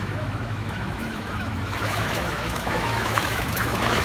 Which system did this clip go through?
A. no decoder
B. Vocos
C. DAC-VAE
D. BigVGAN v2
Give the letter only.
C